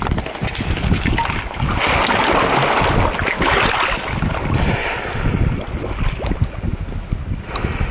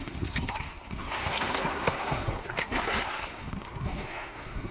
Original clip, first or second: first